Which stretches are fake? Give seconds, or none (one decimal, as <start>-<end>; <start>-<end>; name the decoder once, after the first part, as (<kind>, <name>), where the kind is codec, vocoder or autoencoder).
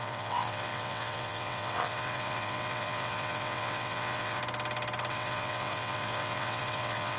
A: 0.0-4.4 (vocoder, WaveNeXt); 5.1-7.2